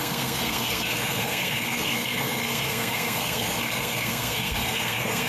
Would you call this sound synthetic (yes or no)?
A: yes